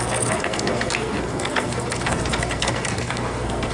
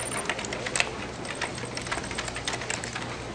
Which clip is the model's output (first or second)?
first